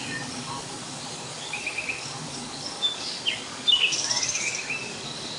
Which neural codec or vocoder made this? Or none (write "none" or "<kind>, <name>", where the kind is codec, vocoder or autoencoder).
codec, DAC